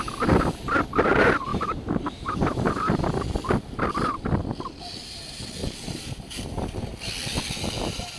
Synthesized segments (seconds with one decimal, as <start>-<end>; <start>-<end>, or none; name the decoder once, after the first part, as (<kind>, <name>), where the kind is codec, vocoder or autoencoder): 1.5-2.7 (vocoder, BigVGAN v2); 5.6-6.3